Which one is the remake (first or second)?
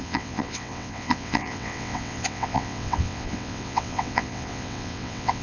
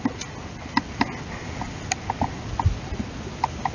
first